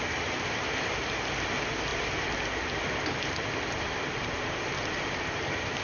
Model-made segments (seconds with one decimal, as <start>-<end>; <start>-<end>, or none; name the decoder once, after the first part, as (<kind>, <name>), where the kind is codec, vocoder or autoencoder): none